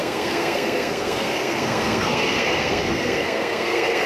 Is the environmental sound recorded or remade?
remade